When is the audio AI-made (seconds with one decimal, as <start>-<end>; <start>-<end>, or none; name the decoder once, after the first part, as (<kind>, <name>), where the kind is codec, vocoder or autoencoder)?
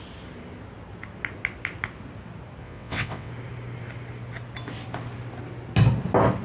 2.6-3.3 (vocoder, WaveNeXt)